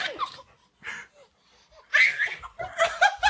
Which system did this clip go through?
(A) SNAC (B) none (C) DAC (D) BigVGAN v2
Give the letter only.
B